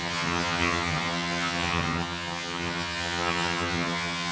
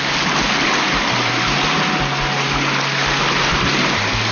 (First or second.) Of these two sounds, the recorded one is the second